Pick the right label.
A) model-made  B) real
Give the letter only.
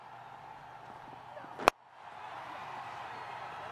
B